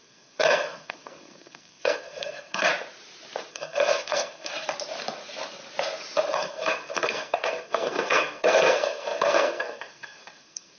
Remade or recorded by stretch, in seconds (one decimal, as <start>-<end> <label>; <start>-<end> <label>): 0.0-2.7 remade; 2.7-3.5 recorded; 3.5-4.5 remade; 4.5-6.3 recorded; 6.3-10.8 remade